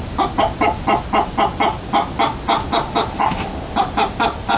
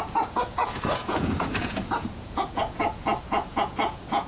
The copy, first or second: second